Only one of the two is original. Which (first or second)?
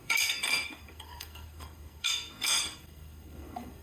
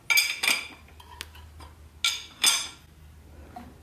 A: second